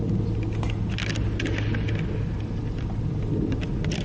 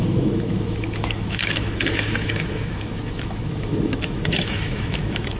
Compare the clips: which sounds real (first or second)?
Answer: first